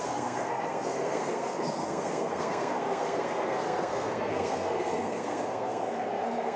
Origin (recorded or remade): remade